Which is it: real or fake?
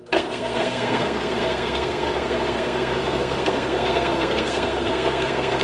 fake